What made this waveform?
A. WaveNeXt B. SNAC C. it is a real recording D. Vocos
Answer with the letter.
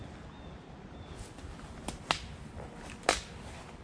C